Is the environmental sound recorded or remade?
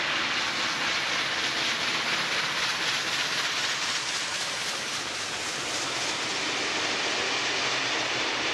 recorded